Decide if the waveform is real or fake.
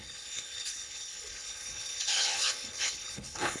fake